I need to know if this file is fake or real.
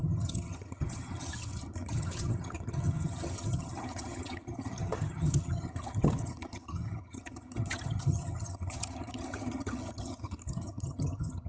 fake